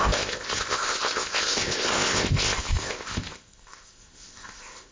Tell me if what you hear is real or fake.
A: fake